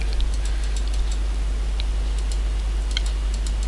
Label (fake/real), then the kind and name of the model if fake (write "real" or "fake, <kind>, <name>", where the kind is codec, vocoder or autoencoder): real